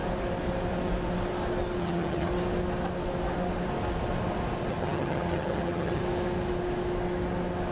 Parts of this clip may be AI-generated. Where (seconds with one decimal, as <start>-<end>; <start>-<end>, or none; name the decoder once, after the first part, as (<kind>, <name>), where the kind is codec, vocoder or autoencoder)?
1.8-2.3 (vocoder, HiFi-GAN); 4.7-6.0